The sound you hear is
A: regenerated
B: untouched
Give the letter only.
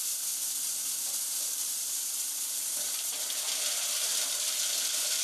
A